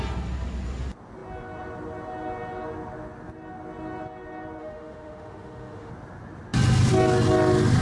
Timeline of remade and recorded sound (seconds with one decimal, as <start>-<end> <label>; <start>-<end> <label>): 0.0-4.6 recorded; 4.6-5.9 remade; 5.9-7.8 recorded